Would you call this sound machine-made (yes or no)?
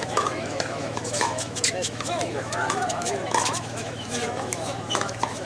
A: yes